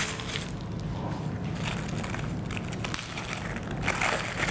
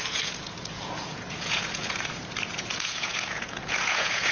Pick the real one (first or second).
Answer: first